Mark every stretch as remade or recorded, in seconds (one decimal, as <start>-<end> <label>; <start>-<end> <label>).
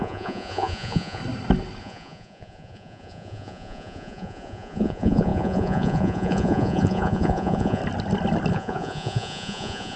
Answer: 0.0-1.2 remade; 1.2-1.8 recorded; 1.8-7.8 remade; 7.8-8.5 recorded; 8.5-10.0 remade